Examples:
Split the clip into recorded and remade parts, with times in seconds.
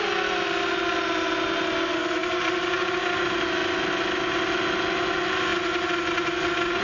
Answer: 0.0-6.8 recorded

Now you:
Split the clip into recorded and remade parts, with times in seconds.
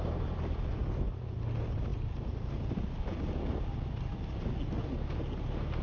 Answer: 0.0-5.8 recorded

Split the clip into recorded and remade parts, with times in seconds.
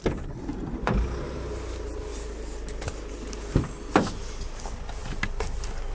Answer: 0.0-5.9 recorded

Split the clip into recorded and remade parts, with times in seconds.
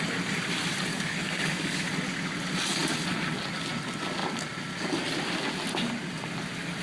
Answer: 0.0-0.9 recorded; 0.9-1.9 remade; 1.9-6.8 recorded